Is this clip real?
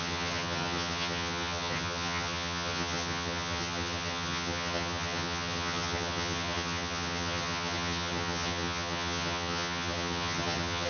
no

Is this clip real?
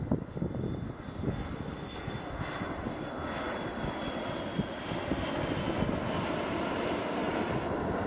yes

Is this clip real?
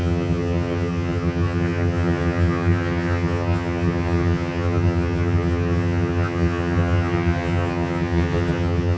no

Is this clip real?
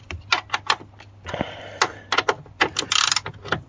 yes